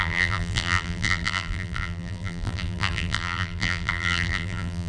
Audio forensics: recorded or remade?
remade